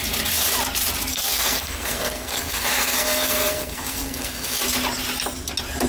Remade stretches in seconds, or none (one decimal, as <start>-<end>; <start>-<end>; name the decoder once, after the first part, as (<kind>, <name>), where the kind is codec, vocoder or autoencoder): 1.1-4.6 (codec, SNAC)